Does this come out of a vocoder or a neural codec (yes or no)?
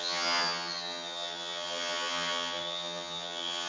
yes